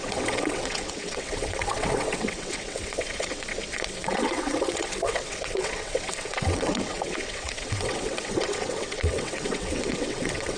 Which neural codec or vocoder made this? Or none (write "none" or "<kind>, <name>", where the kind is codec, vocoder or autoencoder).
vocoder, WaveNeXt